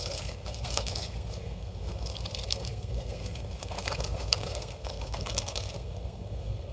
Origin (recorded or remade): remade